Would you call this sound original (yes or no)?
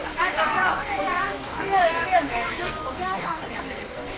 no